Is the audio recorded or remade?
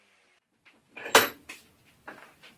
recorded